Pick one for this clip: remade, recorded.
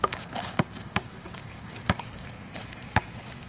remade